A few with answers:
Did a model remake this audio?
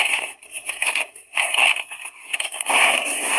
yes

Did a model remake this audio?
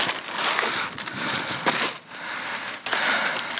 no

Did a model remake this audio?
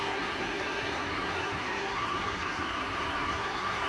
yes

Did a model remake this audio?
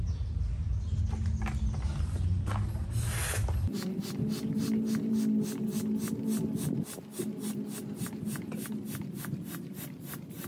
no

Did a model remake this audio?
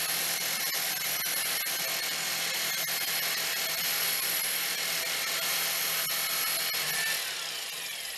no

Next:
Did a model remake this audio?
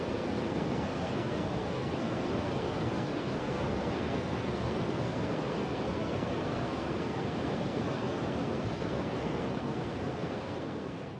yes